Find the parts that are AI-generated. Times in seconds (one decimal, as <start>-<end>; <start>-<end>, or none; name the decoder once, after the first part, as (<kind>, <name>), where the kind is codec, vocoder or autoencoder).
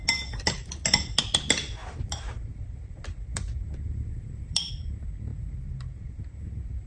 1.8-4.7 (vocoder, BigVGAN v2); 5.3-6.3